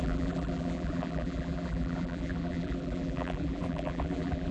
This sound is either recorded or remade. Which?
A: remade